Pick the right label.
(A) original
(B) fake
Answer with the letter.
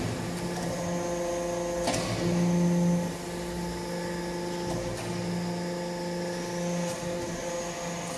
A